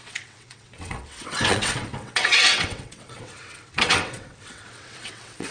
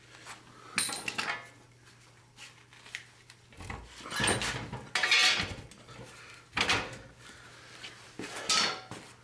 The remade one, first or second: first